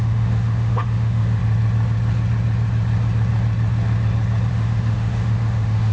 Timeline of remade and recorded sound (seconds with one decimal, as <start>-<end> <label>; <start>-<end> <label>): 0.0-1.4 remade; 1.4-4.5 recorded; 4.5-5.9 remade